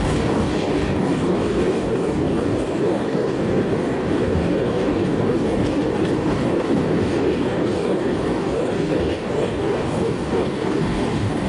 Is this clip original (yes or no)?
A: no